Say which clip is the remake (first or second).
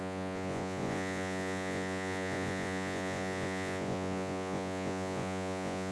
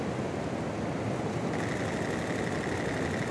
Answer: first